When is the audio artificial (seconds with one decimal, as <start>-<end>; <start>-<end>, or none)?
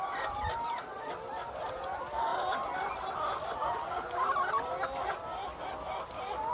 0.0-2.3; 6.1-6.5